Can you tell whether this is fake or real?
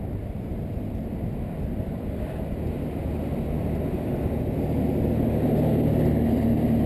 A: real